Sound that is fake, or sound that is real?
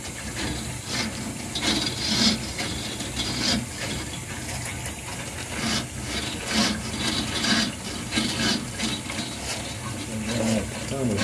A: real